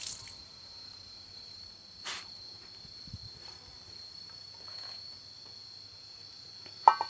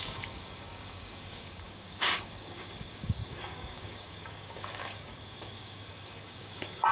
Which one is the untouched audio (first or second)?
first